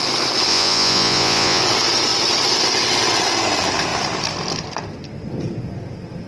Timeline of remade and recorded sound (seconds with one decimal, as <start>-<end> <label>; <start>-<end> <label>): 0.0-0.5 recorded; 0.5-1.6 remade; 1.6-6.3 recorded